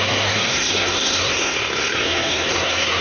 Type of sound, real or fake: fake